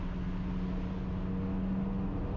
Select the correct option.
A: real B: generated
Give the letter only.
A